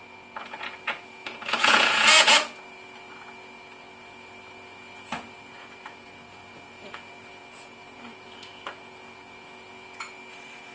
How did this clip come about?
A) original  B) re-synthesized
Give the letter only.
B